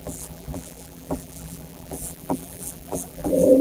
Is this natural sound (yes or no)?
no